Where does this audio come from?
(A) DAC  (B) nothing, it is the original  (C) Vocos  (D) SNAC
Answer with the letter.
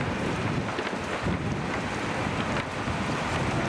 B